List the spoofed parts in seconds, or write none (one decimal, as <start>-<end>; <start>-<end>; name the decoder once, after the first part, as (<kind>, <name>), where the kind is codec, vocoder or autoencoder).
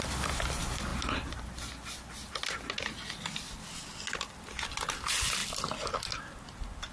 none